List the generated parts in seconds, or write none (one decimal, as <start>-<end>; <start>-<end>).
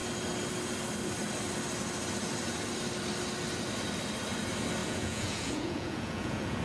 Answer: 4.8-6.6